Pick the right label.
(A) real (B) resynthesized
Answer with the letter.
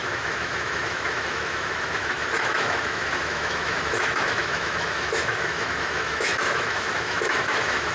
B